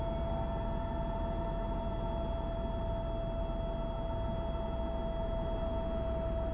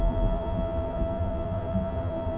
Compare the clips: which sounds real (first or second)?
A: first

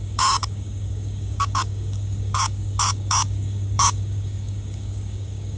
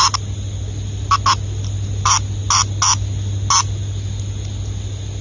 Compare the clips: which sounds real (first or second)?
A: second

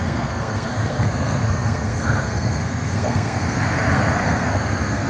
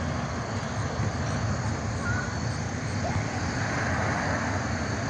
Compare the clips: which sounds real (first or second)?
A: second